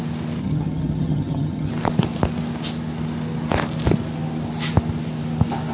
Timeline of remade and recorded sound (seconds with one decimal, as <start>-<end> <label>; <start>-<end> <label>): 0.0-0.4 recorded; 0.4-1.7 remade; 1.7-5.7 recorded

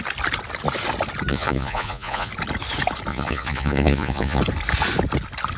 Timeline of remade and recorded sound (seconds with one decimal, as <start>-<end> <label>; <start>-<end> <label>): 0.0-1.3 recorded; 1.3-2.3 remade; 2.3-3.1 recorded; 3.1-4.4 remade; 4.4-5.6 recorded

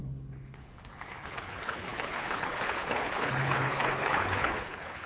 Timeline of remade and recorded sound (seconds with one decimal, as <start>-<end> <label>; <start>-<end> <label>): 0.0-5.1 remade

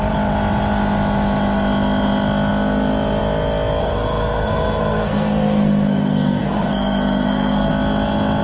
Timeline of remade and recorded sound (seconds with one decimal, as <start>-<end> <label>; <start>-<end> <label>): 0.0-3.8 recorded; 3.8-7.7 remade; 7.7-8.4 recorded

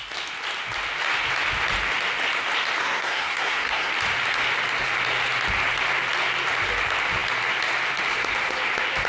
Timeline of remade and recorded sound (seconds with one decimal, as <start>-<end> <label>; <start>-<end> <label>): 0.0-2.8 recorded; 2.8-3.9 remade; 3.9-9.1 recorded